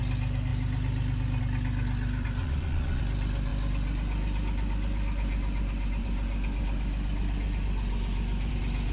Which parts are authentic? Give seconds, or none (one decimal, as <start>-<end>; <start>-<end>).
0.0-2.4; 3.0-8.9